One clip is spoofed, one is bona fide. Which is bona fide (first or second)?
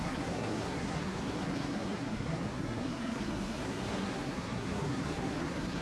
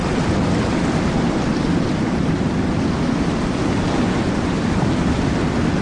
second